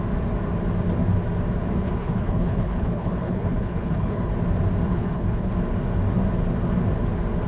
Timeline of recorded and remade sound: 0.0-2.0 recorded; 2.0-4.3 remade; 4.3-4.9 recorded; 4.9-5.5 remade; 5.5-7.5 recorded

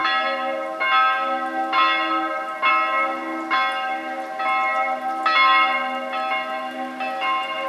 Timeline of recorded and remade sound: 0.0-7.7 recorded

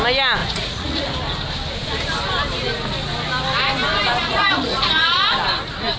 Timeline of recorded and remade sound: 0.0-0.4 recorded; 0.4-1.1 remade; 1.1-4.2 recorded; 4.2-5.3 remade; 5.3-6.0 recorded

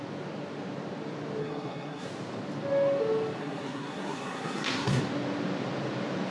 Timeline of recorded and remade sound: 0.0-1.4 recorded; 1.4-2.1 remade; 2.1-3.4 recorded; 3.4-5.0 remade; 5.0-6.3 recorded

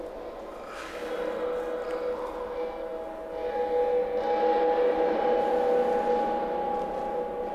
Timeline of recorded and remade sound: 0.0-7.5 recorded

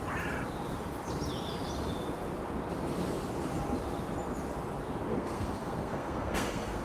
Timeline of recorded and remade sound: 0.0-5.1 recorded; 5.1-6.8 remade